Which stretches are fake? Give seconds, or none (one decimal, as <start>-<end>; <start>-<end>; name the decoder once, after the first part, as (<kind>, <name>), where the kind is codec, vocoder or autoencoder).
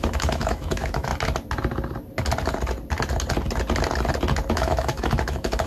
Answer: 0.0-1.1 (autoencoder, DAC-VAE); 4.5-5.7